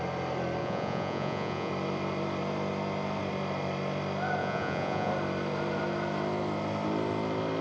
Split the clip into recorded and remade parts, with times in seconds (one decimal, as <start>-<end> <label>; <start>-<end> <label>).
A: 0.0-0.6 recorded; 0.6-1.7 remade; 1.7-4.4 recorded; 4.4-5.1 remade; 5.1-7.6 recorded